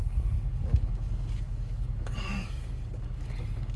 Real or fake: fake